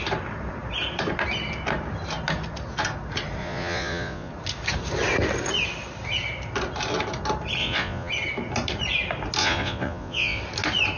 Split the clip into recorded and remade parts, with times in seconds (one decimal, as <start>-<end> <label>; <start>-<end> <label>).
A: 0.0-3.4 recorded; 3.4-4.3 remade; 4.3-7.6 recorded; 7.6-8.1 remade; 8.1-9.4 recorded; 9.4-10.4 remade; 10.4-11.0 recorded